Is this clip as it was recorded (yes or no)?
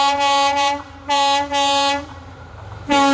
no